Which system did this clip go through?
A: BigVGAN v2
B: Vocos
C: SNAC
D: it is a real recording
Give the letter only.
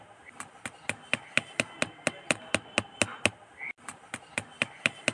D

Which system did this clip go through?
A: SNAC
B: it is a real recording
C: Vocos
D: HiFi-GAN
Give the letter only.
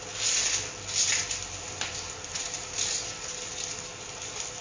B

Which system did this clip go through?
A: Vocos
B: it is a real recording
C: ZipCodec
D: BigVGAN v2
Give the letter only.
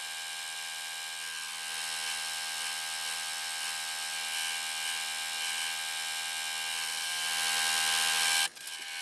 B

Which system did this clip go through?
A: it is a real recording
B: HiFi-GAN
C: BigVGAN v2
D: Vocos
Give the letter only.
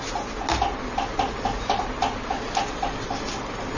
A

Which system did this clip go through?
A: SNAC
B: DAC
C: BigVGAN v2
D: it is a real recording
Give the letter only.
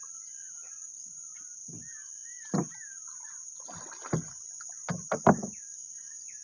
D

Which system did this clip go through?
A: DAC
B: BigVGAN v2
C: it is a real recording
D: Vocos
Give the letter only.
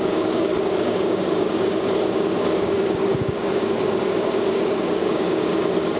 A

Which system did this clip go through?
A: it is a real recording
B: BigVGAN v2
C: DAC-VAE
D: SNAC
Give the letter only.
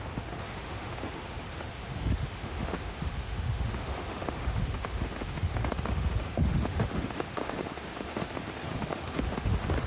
C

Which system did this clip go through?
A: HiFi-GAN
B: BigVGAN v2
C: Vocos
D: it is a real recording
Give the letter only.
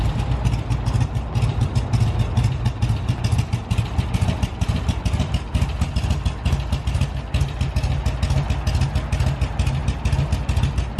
D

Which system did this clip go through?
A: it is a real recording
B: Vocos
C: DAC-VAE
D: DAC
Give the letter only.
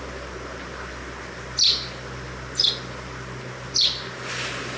A